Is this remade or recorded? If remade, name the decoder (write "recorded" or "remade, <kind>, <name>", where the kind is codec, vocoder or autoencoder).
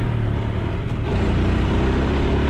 recorded